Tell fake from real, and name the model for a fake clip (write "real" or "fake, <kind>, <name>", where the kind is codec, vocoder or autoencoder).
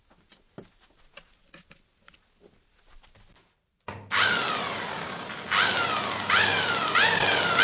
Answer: real